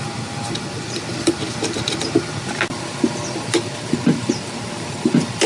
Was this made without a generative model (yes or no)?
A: yes